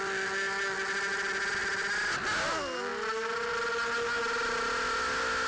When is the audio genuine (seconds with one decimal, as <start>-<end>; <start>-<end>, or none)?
0.0-5.5